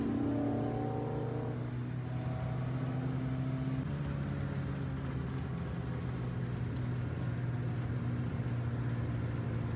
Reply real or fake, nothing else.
real